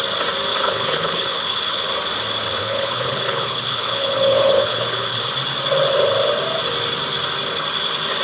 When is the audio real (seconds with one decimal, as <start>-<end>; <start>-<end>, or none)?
0.0-0.5; 1.9-2.6; 5.2-8.2